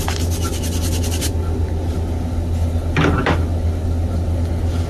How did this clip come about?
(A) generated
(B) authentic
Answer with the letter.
B